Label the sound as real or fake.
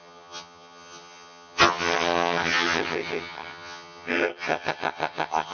fake